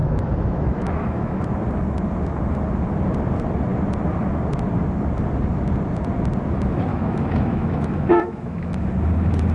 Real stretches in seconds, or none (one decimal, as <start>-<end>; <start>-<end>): 1.5-6.9; 8.8-9.5